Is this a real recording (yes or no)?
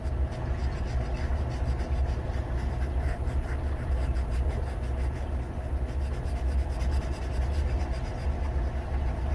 yes